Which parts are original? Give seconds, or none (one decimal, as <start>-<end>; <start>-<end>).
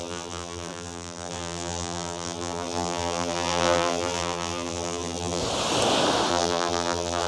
5.4-6.3